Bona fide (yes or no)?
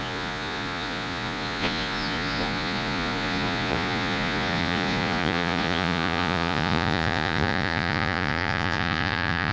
no